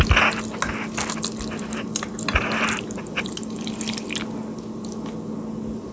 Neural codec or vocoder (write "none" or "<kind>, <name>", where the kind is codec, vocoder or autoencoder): none